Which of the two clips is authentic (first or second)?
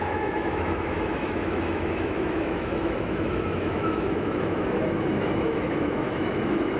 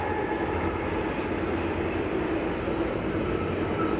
second